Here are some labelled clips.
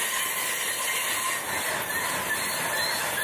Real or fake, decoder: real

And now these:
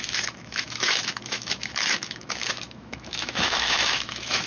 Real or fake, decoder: fake, autoencoder, DAC-VAE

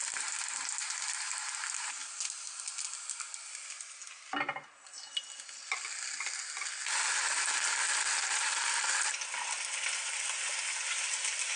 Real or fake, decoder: real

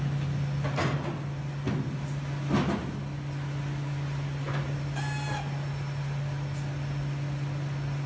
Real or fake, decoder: real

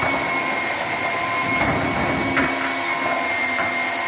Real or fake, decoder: real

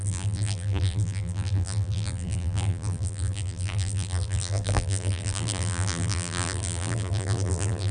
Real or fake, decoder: fake, vocoder, BigVGAN v2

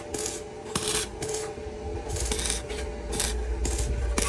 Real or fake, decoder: real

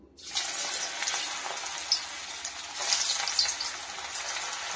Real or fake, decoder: real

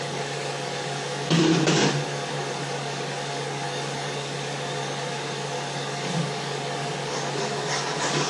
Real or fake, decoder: fake, codec, DAC